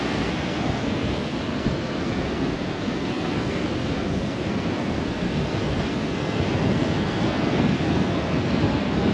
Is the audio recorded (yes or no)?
no